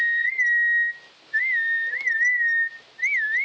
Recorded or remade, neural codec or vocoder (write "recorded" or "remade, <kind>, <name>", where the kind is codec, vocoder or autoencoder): recorded